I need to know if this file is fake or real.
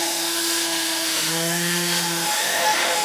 fake